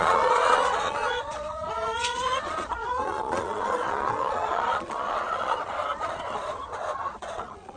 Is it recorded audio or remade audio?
remade